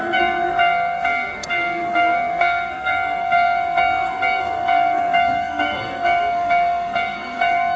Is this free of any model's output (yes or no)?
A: no